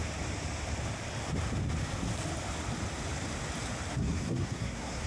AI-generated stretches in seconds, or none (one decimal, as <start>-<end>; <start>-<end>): 3.9-5.1

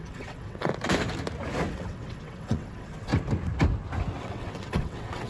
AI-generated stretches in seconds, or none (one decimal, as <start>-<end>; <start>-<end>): 0.0-0.7; 1.7-3.1; 4.2-5.3

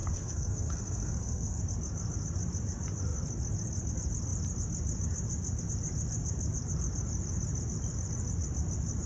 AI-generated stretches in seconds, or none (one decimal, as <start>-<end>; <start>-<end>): 0.0-1.6